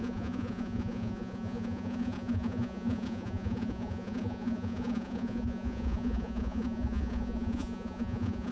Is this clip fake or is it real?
fake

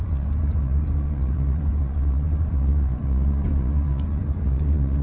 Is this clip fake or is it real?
fake